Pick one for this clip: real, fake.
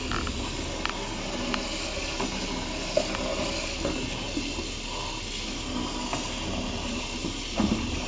real